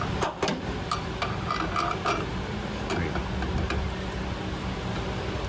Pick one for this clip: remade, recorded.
recorded